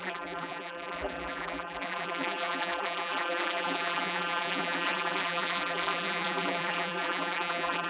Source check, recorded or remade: remade